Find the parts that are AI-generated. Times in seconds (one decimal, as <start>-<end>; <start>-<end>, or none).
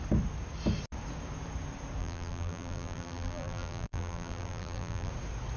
2.0-5.1